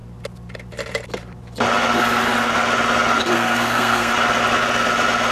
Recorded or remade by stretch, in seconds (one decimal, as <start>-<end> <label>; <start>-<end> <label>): 0.0-3.2 recorded; 3.2-4.1 remade; 4.1-5.3 recorded